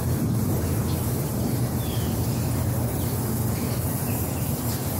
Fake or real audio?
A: real